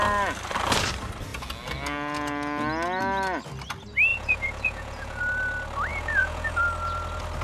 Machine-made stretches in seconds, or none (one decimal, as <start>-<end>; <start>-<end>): 4.1-5.2; 5.9-6.6